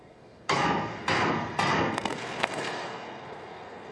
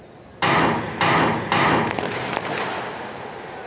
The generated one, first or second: first